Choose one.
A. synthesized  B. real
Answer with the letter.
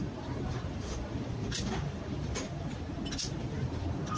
A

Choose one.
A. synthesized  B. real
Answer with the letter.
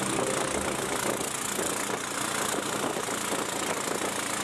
B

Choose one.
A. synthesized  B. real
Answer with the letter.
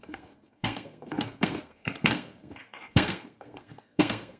A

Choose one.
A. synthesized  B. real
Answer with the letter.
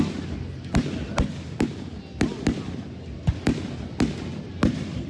B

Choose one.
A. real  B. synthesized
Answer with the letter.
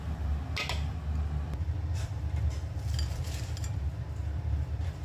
A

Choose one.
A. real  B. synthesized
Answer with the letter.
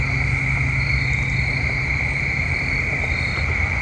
A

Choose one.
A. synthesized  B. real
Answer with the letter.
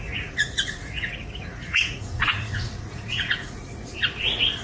A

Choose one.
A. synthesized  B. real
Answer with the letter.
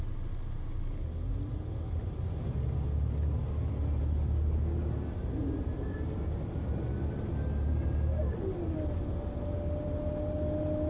B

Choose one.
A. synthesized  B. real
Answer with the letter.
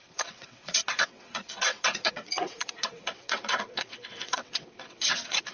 A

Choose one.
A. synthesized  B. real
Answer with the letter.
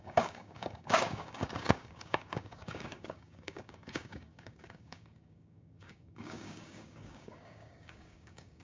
A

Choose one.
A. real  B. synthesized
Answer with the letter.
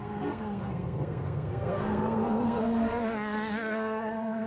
B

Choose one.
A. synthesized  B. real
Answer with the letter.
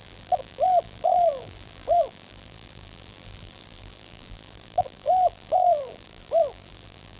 A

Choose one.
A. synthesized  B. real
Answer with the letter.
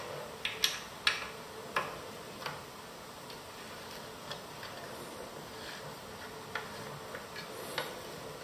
B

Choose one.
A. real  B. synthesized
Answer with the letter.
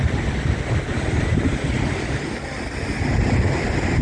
A